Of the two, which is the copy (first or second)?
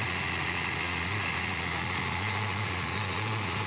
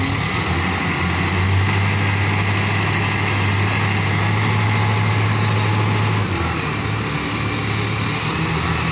first